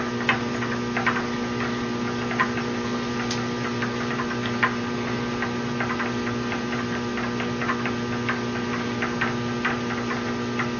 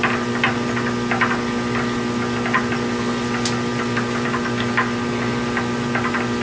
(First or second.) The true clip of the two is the second